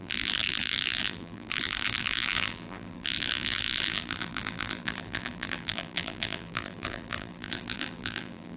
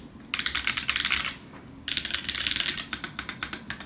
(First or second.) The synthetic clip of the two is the first